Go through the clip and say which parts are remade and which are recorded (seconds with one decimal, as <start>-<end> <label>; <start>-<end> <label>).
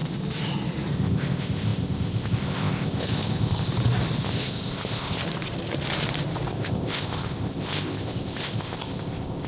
0.0-0.9 recorded; 0.9-3.7 remade; 3.7-4.2 recorded; 4.2-5.2 remade; 5.2-6.5 recorded; 6.5-9.5 remade